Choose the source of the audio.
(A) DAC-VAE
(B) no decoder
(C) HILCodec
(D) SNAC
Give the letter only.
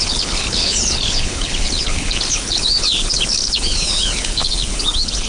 C